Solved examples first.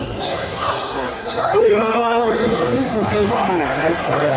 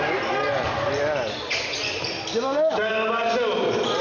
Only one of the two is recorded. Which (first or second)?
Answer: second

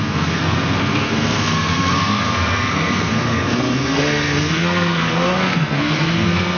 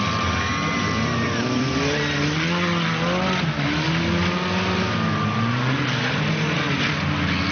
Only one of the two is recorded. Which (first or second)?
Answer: second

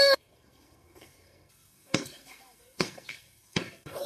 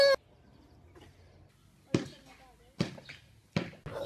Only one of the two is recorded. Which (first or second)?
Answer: second